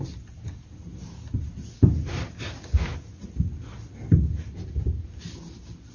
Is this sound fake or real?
real